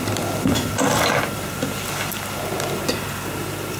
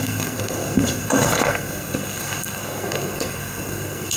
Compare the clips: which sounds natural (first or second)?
first